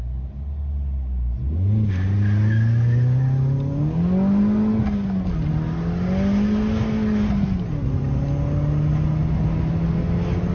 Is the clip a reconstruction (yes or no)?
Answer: no